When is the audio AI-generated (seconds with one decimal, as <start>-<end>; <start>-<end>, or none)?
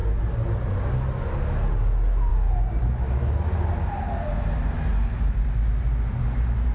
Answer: none